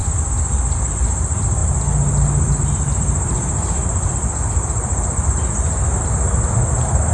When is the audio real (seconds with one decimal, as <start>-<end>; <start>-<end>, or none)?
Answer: 0.9-7.1